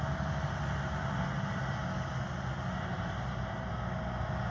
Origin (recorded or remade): recorded